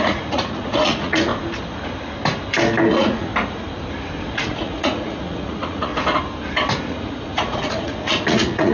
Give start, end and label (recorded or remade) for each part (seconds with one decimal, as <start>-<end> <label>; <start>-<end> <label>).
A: 0.0-1.3 remade; 1.3-2.9 recorded; 2.9-3.3 remade; 3.3-4.2 recorded; 4.2-5.9 remade; 5.9-6.8 recorded; 6.8-8.7 remade